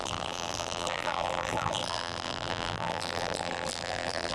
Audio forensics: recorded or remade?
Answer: remade